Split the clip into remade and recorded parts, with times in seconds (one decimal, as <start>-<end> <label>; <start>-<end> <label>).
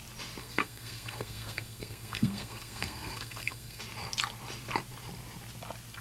0.0-0.4 recorded; 0.4-3.8 remade; 3.8-6.0 recorded